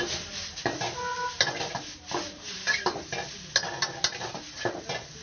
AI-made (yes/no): no